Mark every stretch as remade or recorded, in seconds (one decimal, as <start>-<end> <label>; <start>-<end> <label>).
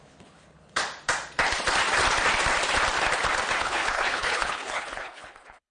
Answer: 0.0-0.8 remade; 0.8-3.6 recorded; 3.6-5.7 remade